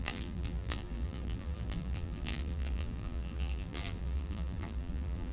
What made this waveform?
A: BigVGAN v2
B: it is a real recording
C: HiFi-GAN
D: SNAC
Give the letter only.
A